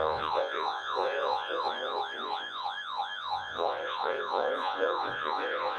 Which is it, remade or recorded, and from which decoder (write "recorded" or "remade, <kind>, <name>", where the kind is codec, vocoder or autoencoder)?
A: remade, vocoder, Vocos